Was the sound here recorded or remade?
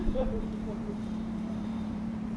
remade